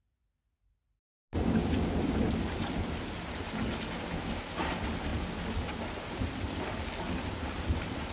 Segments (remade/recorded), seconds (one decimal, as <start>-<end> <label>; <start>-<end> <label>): 0.0-8.1 recorded